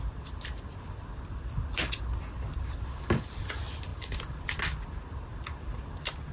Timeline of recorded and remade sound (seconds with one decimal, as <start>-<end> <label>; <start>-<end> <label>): 0.0-6.3 recorded